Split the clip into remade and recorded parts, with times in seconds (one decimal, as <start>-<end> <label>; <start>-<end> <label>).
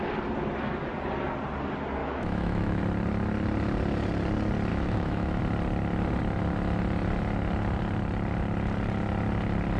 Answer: 0.0-2.0 recorded; 2.0-2.8 remade; 2.8-4.7 recorded; 4.7-5.4 remade; 5.4-9.8 recorded